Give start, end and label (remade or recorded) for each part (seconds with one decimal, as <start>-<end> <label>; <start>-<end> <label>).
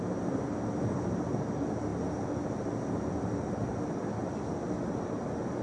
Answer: 0.0-5.6 recorded